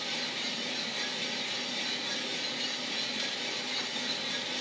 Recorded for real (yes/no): yes